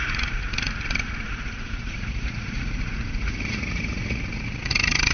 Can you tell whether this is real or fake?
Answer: fake